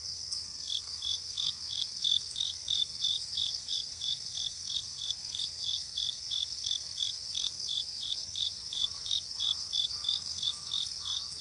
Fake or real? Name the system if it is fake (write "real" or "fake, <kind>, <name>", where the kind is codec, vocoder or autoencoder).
fake, codec, SNAC